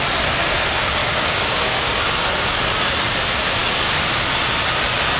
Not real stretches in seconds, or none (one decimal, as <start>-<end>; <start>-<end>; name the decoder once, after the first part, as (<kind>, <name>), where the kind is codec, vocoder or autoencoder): 1.0-1.8 (codec, DAC)